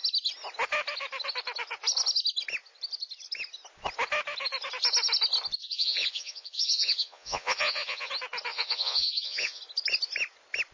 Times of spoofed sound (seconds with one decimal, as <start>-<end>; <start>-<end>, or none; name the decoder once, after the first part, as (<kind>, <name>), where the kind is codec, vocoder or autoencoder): 5.6-8.1 (vocoder, Vocos); 8.5-9.6